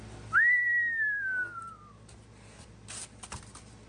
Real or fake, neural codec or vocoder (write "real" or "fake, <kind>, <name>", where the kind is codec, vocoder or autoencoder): real